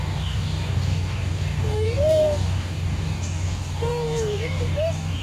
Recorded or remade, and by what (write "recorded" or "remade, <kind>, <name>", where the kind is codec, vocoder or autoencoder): remade, codec, DAC